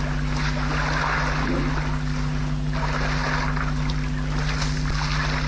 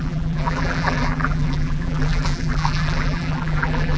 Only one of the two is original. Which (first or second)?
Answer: first